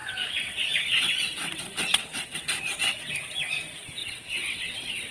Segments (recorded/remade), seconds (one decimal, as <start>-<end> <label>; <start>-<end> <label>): 0.0-3.1 remade; 3.1-4.0 recorded; 4.0-5.1 remade